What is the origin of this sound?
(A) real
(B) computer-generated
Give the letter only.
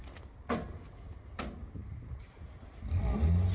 A